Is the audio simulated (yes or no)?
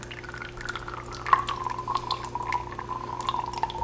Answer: no